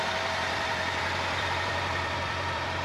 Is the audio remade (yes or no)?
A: yes